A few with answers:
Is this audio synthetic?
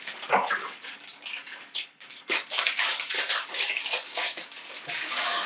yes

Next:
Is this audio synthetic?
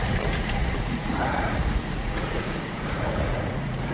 yes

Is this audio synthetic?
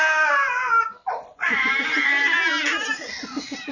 no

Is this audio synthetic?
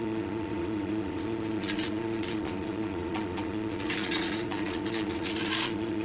yes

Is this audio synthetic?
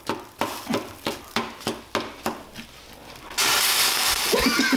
no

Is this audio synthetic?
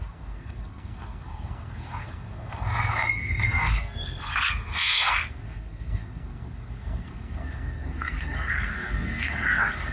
yes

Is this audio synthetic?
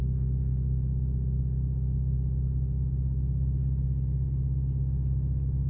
no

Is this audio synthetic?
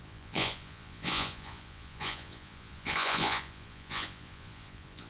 yes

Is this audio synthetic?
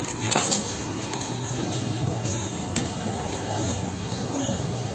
yes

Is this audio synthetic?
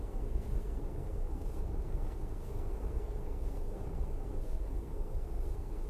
yes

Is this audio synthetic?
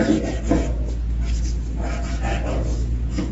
no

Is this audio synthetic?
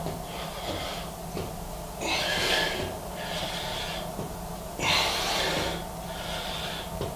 no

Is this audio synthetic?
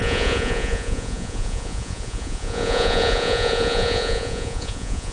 yes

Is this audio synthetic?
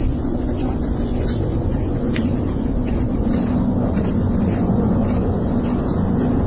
yes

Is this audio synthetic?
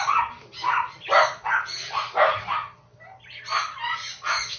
no